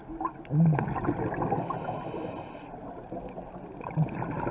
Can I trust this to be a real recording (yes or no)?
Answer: yes